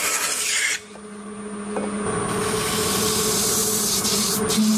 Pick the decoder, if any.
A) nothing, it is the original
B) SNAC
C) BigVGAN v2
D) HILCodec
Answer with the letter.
A